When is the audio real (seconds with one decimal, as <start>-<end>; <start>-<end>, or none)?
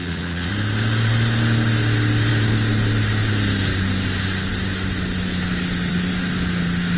0.5-7.0